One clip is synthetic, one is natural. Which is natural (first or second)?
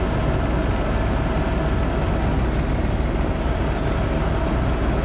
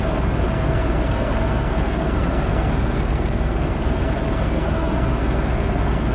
first